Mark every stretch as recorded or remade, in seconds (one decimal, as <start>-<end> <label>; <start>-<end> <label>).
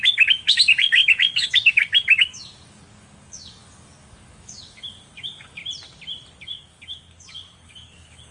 0.0-5.6 remade; 5.6-6.4 recorded; 6.4-8.3 remade